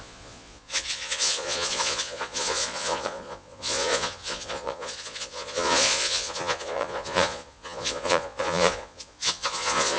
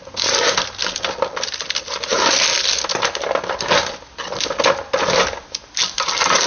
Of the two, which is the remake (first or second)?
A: first